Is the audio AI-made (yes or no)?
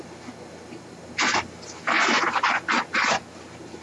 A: no